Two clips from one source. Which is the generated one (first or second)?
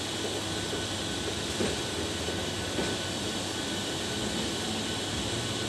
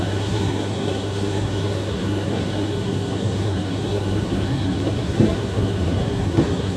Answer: second